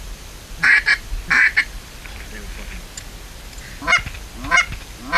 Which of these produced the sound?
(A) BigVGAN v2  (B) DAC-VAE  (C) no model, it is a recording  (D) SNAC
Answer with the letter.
C